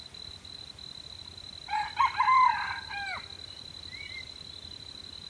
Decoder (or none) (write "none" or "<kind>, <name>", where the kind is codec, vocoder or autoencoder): none